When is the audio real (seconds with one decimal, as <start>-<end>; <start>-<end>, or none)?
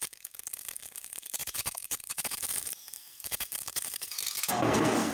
none